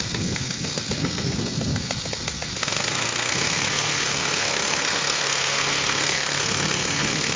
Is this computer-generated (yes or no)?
yes